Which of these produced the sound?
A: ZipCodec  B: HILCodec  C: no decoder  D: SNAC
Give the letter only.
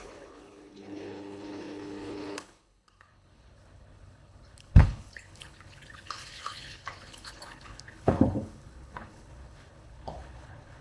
B